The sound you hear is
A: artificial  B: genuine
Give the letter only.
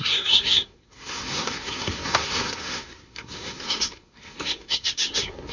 A